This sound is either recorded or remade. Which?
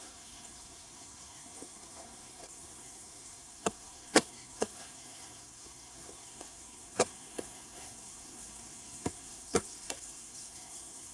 remade